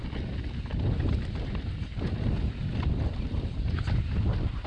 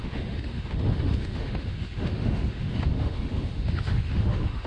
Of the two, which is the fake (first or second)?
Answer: second